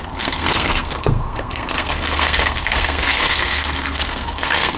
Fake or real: fake